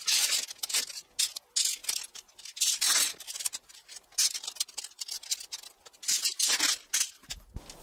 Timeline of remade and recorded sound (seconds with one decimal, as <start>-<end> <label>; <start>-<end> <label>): 0.0-7.8 recorded